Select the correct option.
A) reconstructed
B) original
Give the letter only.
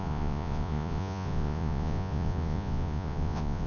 A